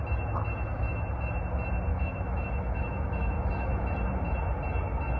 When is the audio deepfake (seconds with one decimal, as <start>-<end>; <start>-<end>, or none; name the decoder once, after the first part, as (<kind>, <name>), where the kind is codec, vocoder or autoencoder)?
1.9-3.8 (autoencoder, DAC-VAE)